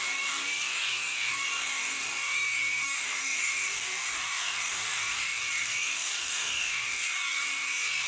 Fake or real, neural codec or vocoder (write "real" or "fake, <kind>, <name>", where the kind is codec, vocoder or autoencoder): fake, codec, DAC